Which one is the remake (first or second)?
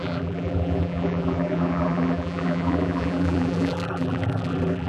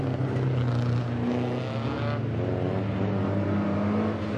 first